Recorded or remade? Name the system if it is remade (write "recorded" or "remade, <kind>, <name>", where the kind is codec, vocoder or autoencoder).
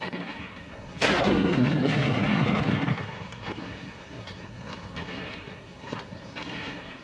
remade, codec, SNAC